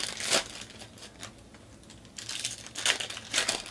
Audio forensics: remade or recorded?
recorded